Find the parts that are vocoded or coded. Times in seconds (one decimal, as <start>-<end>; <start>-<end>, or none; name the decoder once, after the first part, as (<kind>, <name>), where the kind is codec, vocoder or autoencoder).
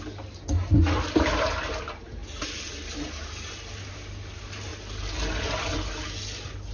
none